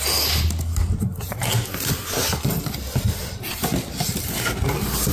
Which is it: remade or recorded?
recorded